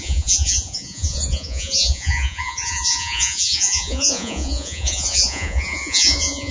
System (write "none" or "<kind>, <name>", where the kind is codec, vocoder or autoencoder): vocoder, Vocos